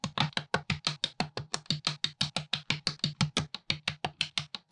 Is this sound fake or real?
real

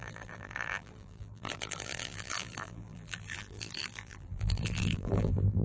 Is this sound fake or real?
fake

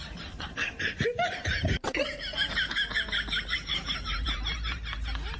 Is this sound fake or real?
fake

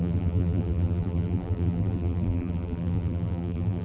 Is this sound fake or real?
fake